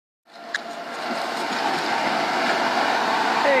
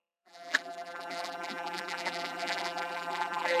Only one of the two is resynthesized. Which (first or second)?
second